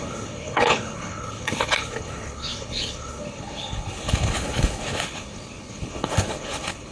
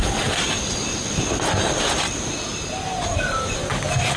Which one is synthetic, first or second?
first